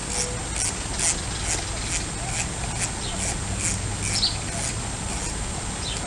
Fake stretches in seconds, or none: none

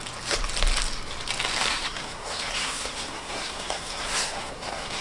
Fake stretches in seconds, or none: 1.7-5.0 (codec, SNAC)

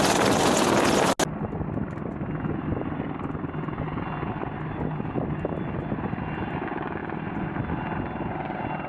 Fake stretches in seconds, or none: none

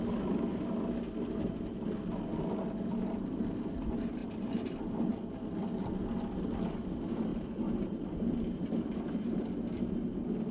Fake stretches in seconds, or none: 4.2-5.2 (vocoder, BigVGAN v2); 7.3-9.5

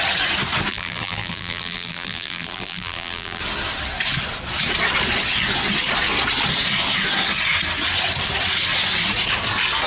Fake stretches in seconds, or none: 0.7-3.4 (vocoder, BigVGAN v2)

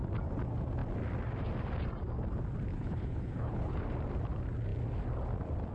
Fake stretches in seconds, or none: 2.7-3.8 (codec, HILCodec)

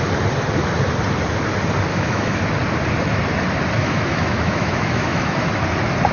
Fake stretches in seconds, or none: 1.9-2.4 (autoencoder, DAC-VAE); 3.8-5.5

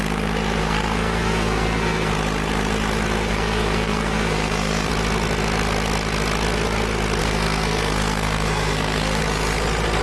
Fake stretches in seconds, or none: 0.6-2.1 (codec, SNAC); 3.3-4.9; 7.2-9.2